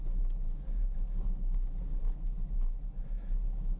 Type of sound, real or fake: real